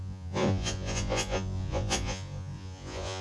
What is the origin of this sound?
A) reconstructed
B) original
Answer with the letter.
A